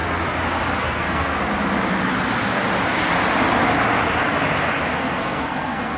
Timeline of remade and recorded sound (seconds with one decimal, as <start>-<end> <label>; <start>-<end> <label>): 0.0-0.8 recorded; 0.8-1.3 remade; 1.3-4.9 recorded; 4.9-6.0 remade